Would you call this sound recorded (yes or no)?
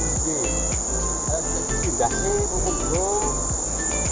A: yes